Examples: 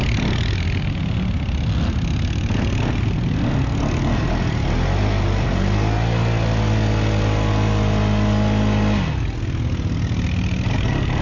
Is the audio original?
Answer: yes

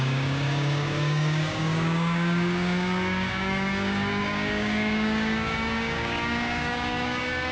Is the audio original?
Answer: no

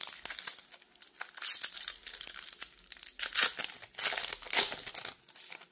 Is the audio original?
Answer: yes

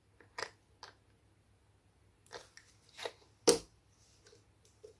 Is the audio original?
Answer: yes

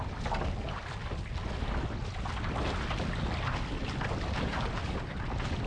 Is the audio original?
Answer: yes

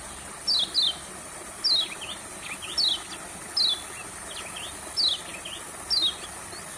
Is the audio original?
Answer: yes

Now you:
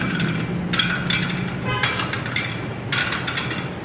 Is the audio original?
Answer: yes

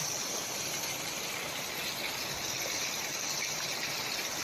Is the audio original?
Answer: yes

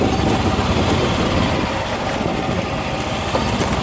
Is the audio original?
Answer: yes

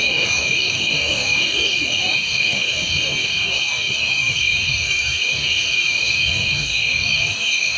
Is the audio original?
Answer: no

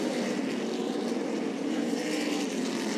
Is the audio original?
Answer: yes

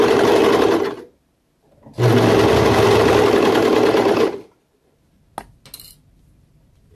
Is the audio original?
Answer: yes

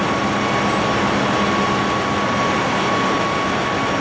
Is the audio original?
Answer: yes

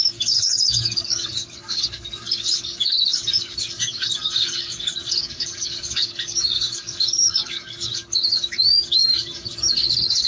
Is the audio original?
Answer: no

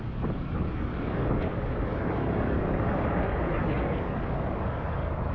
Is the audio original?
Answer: no